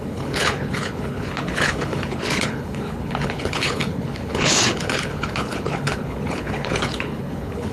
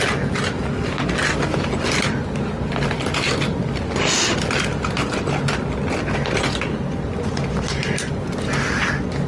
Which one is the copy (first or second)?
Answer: first